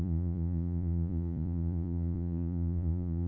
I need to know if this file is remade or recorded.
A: remade